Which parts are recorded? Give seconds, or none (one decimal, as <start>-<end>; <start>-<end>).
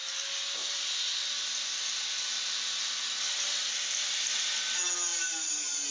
0.0-0.6; 3.9-5.1